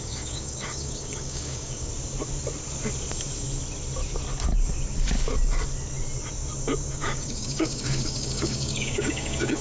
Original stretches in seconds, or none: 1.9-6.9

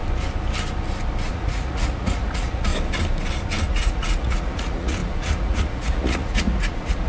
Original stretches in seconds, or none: 0.0-1.3; 2.7-3.7

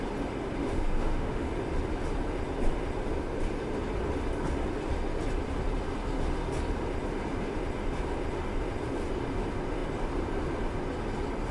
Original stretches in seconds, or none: 0.0-0.6; 1.5-11.5

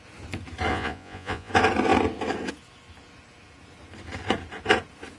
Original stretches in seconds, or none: 0.0-0.7; 1.5-5.2

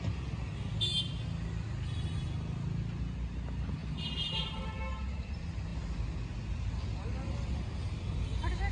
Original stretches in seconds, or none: 0.0-3.8; 4.6-8.7